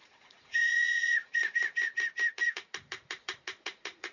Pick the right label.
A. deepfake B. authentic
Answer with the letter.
A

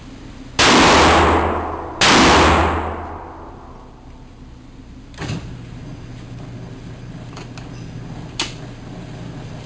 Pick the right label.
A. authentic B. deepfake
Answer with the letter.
A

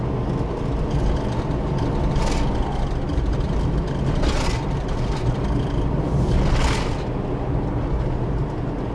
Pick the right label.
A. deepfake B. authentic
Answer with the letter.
B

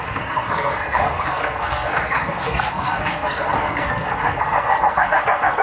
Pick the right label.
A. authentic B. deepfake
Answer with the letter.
B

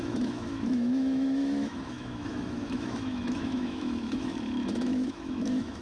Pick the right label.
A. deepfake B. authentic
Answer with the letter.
A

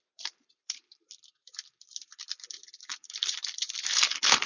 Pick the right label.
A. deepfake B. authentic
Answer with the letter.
A